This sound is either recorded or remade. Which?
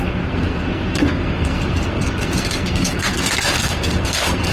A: remade